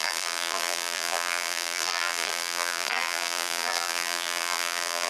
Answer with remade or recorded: remade